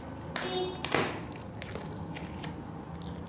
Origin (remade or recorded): recorded